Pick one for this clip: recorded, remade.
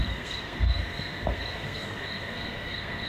remade